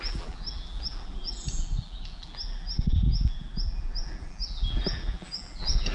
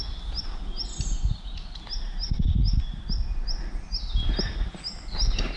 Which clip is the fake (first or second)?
first